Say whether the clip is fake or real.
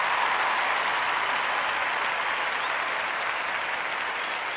real